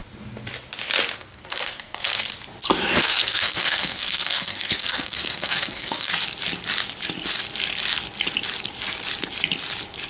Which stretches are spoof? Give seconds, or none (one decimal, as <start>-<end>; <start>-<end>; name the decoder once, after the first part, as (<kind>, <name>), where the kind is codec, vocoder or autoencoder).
1.1-2.2 (codec, SNAC); 2.9-6.1